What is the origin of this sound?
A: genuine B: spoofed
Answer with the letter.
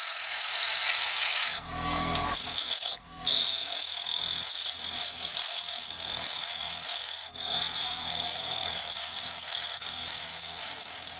B